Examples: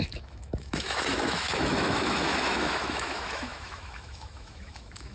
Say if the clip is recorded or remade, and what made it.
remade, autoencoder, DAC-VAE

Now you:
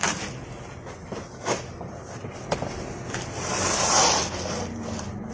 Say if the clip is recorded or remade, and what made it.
recorded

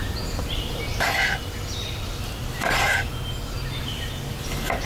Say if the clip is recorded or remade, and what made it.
recorded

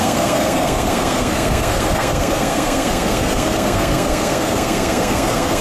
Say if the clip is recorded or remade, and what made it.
remade, codec, SNAC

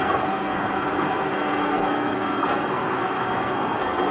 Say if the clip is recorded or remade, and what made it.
remade, codec, SNAC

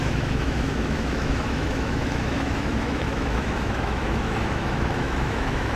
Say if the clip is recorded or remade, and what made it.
remade, autoencoder, DAC-VAE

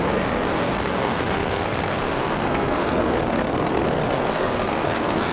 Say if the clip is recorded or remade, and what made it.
remade, codec, SNAC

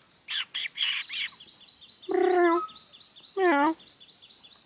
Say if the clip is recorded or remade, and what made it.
recorded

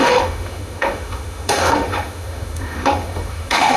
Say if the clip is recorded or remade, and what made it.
remade, autoencoder, DAC-VAE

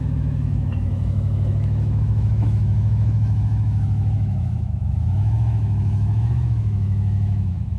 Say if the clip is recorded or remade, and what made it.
remade, autoencoder, DAC-VAE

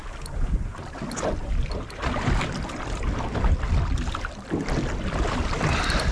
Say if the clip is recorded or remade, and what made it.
recorded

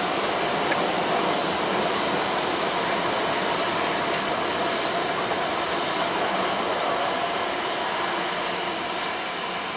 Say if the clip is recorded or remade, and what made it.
recorded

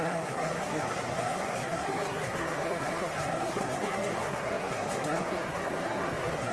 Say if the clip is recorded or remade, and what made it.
remade, codec, SNAC